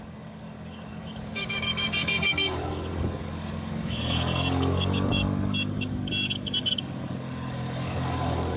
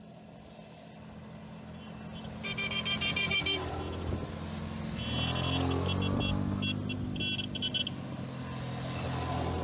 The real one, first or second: second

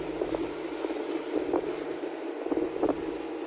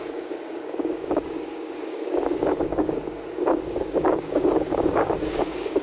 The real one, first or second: first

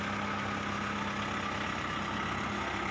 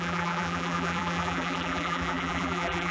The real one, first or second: first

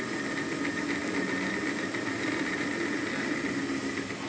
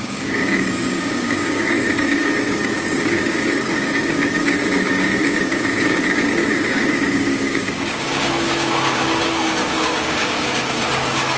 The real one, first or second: first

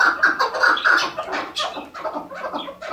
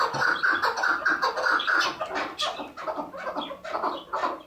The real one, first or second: second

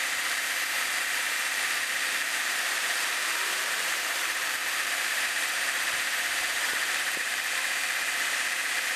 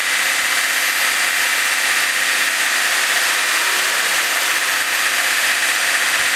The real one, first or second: second